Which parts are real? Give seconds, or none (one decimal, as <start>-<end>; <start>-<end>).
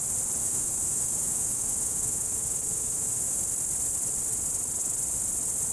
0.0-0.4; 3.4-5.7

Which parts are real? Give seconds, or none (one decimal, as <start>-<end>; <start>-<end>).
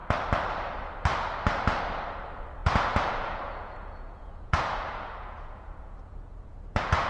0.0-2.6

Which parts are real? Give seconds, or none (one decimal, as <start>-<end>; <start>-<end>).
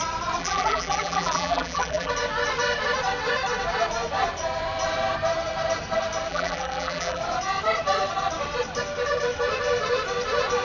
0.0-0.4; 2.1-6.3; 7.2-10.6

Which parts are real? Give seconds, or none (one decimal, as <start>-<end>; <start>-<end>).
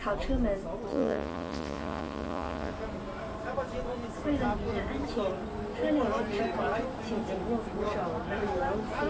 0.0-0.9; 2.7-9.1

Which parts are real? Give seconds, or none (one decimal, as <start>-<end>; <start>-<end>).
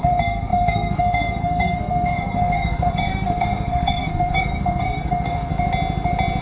5.5-6.4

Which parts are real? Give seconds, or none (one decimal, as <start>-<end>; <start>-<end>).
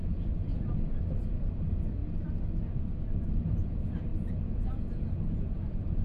0.5-1.1; 2.0-3.3